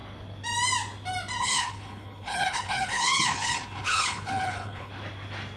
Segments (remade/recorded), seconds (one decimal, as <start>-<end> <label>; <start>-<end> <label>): 0.0-1.4 recorded; 1.4-4.9 remade; 4.9-5.6 recorded